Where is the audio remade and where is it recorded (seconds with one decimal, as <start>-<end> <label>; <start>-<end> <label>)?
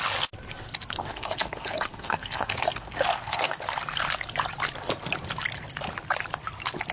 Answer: 0.0-1.0 recorded; 1.0-3.6 remade; 3.6-6.9 recorded